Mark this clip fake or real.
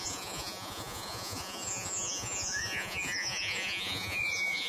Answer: fake